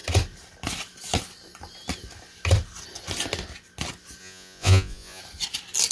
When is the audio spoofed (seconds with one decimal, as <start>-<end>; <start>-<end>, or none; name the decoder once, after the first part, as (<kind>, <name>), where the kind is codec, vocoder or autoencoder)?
4.2-5.2 (vocoder, Vocos)